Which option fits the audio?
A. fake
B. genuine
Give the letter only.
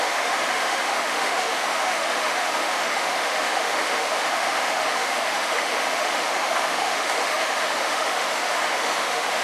A